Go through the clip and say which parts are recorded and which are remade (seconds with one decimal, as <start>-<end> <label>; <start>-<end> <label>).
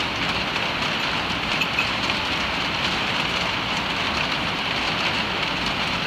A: 0.0-1.5 recorded; 1.5-3.7 remade; 3.7-6.1 recorded